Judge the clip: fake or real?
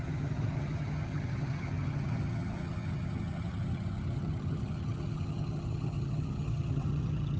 fake